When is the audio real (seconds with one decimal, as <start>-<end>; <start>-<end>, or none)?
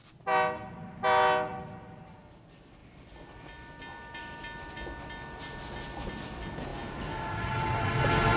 0.0-8.4